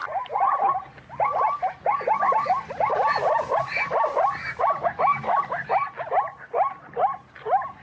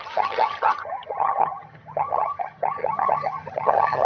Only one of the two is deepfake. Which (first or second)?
second